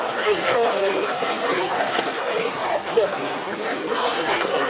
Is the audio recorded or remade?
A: remade